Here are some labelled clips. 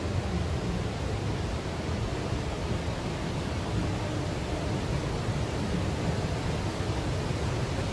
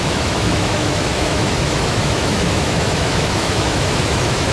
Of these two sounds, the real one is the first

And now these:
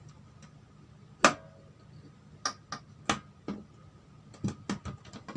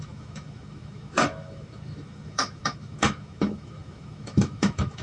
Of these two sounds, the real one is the first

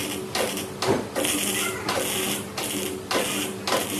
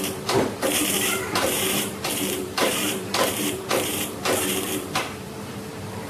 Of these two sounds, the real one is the first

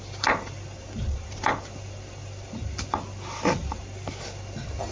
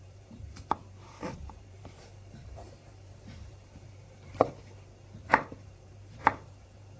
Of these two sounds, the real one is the first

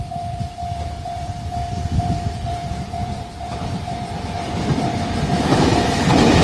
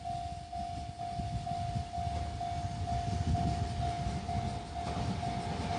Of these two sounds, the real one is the second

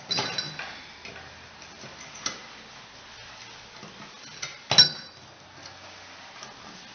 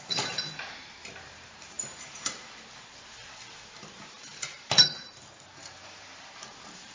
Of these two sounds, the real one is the first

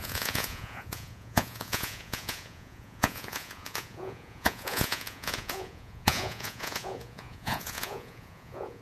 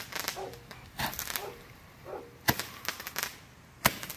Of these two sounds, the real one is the second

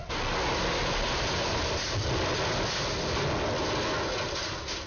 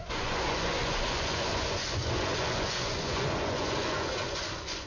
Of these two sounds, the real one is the first